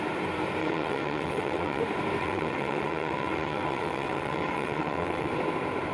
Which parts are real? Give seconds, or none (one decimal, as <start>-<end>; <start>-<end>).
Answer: 0.0-0.6; 1.8-2.2; 5.3-5.9